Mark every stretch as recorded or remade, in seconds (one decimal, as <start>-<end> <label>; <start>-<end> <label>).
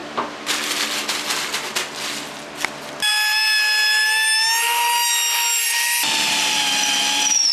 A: 0.0-7.5 recorded